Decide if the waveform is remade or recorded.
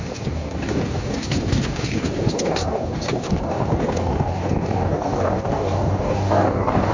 remade